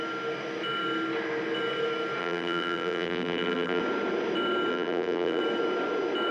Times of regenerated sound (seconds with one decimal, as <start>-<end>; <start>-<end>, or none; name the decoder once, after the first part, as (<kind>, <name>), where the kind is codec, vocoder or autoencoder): 2.2-3.8 (vocoder, BigVGAN v2); 4.7-5.4